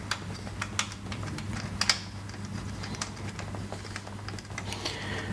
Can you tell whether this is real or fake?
real